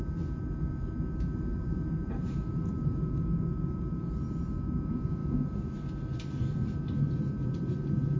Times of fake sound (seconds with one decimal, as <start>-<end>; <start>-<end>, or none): 1.5-3.1